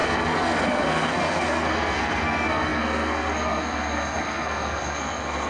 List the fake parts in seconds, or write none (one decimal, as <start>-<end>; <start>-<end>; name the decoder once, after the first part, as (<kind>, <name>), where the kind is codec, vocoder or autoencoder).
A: 0.0-5.5 (codec, SNAC)